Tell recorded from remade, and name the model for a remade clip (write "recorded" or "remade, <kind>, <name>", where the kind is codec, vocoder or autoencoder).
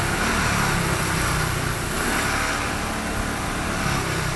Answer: recorded